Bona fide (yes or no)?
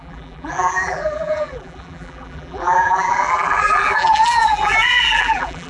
no